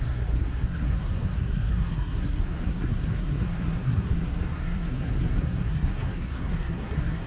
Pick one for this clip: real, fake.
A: fake